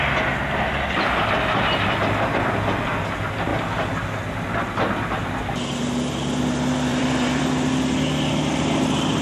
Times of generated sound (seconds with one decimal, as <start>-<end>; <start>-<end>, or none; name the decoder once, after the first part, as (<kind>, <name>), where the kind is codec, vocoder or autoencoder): 6.9-7.4 (vocoder, BigVGAN v2)